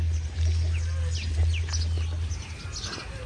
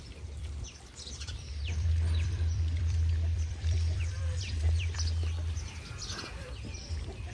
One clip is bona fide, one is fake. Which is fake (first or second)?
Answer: second